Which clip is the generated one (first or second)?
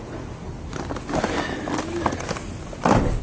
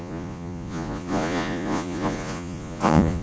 second